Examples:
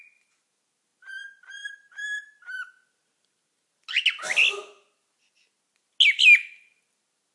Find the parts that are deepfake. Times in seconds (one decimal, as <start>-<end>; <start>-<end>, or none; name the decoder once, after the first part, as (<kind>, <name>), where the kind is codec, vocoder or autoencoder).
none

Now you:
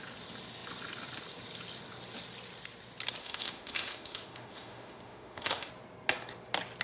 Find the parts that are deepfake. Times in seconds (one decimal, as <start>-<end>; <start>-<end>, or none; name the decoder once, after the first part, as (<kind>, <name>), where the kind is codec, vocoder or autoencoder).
3.2-5.7 (autoencoder, DAC-VAE)

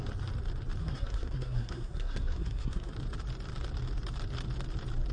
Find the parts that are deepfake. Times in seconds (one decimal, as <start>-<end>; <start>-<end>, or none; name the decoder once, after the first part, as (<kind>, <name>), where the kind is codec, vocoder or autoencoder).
0.8-2.9 (codec, SNAC)

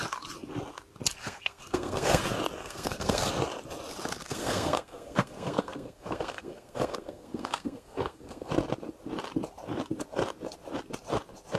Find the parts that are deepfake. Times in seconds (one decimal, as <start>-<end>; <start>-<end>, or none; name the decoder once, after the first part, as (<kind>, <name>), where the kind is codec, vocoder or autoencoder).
1.2-2.2 (codec, SNAC); 2.6-3.3; 4.2-8.5